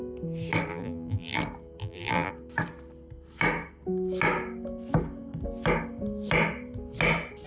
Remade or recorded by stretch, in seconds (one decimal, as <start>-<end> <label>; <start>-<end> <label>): 0.0-0.7 recorded; 0.7-1.4 remade; 1.4-1.8 recorded; 1.8-2.3 remade; 2.3-7.5 recorded